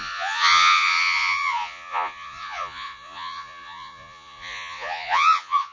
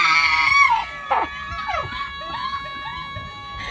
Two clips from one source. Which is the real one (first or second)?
second